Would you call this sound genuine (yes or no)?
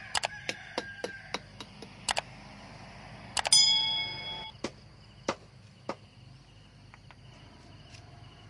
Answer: yes